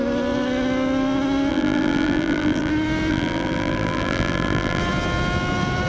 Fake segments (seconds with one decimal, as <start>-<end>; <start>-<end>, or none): 1.5-2.7; 3.1-4.8